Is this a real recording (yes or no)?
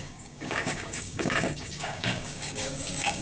no